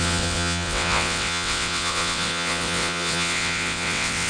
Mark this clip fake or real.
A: fake